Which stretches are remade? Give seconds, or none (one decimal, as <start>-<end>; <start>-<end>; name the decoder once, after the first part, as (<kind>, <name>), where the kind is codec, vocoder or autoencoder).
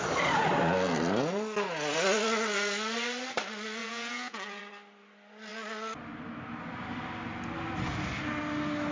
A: 3.8-4.6 (vocoder, Vocos)